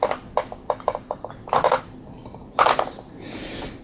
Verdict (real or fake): real